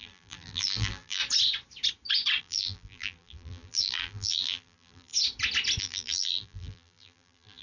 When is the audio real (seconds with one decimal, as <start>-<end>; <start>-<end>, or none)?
1.2-2.4; 5.1-5.8

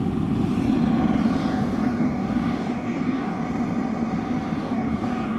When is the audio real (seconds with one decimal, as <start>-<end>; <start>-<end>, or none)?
0.0-1.5; 3.4-4.6

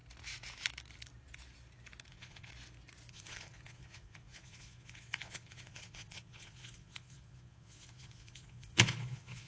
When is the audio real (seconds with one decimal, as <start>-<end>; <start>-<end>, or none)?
0.0-2.1; 2.5-3.1

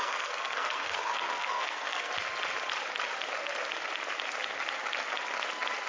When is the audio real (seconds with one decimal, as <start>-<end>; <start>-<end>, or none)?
2.1-5.9

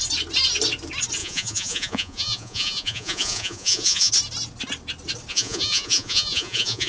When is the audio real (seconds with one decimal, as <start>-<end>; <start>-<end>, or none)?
0.0-1.2; 4.1-5.3

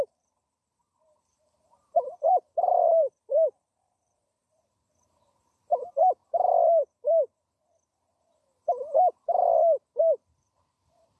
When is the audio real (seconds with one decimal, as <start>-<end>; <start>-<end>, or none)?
6.2-10.0

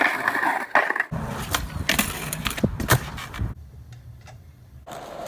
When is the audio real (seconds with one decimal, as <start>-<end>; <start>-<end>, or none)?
0.0-5.3